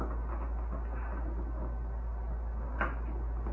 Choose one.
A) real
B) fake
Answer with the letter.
A